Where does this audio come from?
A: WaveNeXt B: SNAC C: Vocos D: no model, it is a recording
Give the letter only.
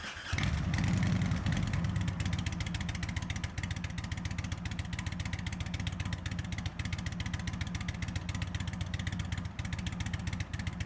D